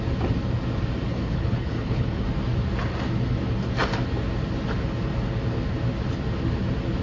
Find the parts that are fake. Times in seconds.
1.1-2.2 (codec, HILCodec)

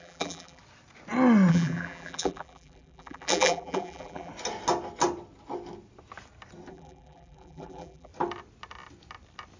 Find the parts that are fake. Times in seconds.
0.0-0.6 (vocoder, BigVGAN v2); 1.5-4.3; 6.7-8.1